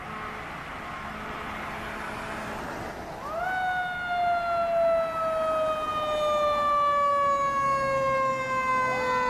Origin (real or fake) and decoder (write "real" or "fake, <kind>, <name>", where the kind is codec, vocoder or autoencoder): real